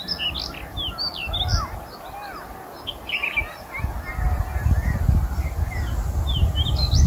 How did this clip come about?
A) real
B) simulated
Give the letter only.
A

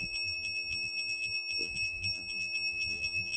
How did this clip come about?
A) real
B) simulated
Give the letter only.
B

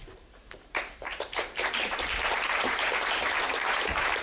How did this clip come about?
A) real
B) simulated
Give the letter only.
B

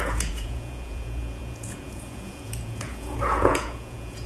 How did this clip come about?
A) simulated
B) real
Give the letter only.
A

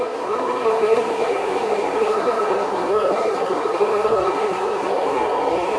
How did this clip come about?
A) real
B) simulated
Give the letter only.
B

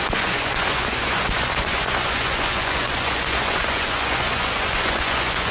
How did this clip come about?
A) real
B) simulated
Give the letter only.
B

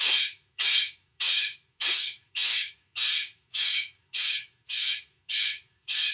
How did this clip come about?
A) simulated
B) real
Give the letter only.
A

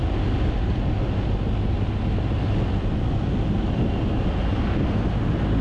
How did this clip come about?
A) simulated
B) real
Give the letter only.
B